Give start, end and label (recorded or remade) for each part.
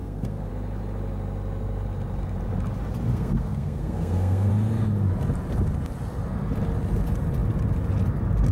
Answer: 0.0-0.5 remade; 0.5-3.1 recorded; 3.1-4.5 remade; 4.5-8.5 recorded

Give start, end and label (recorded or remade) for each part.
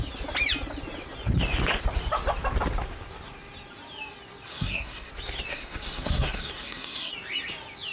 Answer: 0.0-4.5 recorded; 4.5-5.1 remade; 5.1-5.5 recorded; 5.5-7.1 remade; 7.1-7.9 recorded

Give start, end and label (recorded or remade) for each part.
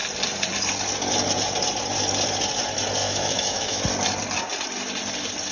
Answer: 0.0-3.0 recorded; 3.0-3.8 remade; 3.8-5.5 recorded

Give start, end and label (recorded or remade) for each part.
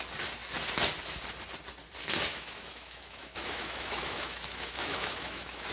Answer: 0.0-2.3 recorded; 2.3-5.7 remade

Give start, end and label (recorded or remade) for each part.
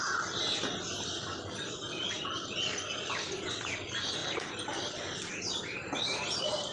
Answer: 0.0-6.7 recorded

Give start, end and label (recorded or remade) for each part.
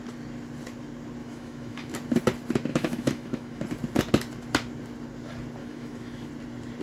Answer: 0.0-1.2 recorded; 1.2-1.9 remade; 1.9-2.7 recorded; 2.7-3.6 remade; 3.6-5.6 recorded; 5.6-6.3 remade; 6.3-6.8 recorded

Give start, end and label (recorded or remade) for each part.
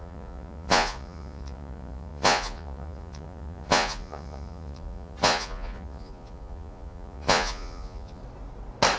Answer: 0.0-8.2 remade; 8.2-9.0 recorded